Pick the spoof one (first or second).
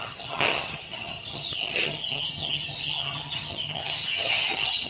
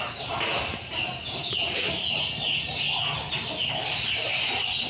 first